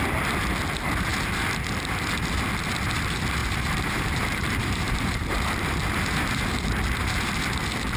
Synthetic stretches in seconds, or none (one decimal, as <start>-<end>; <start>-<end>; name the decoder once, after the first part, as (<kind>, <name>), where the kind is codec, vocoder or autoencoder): 3.4-5.8 (vocoder, BigVGAN v2)